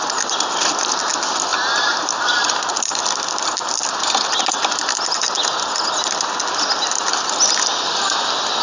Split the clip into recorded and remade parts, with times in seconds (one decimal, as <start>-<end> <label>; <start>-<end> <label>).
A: 0.0-8.6 recorded